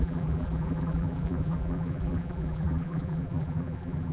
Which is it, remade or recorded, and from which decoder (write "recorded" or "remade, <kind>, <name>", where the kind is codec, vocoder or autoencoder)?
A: remade, vocoder, BigVGAN v2